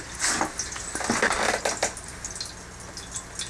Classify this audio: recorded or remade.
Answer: recorded